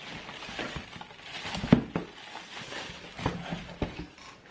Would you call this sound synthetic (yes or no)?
no